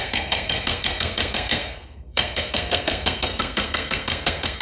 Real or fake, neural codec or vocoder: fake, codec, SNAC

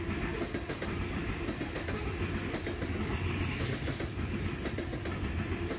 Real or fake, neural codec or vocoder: real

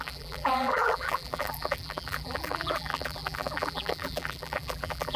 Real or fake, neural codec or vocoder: fake, vocoder, BigVGAN v2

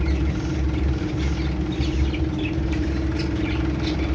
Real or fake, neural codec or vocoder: real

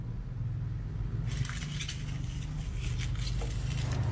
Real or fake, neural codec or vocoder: real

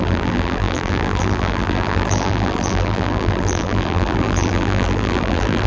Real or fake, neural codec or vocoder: fake, vocoder, BigVGAN v2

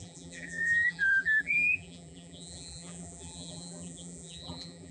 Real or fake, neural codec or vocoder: fake, vocoder, BigVGAN v2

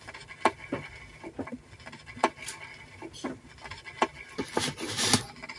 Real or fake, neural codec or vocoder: real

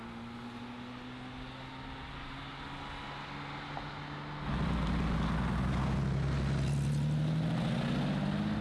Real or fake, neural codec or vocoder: real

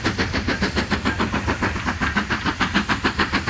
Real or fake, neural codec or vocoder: real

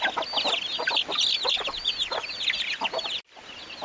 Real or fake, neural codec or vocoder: real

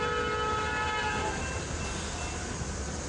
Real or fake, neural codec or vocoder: real